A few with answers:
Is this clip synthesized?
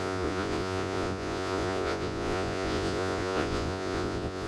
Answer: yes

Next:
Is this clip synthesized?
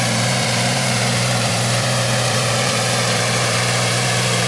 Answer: yes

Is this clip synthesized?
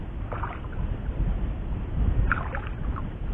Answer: no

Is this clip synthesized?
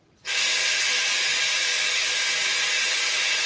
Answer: no